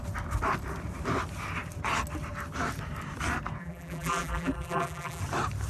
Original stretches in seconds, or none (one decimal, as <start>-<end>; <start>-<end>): 0.0-3.6; 5.2-5.7